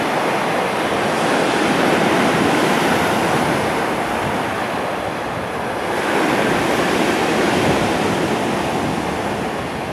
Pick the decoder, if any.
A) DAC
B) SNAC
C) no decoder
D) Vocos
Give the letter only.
C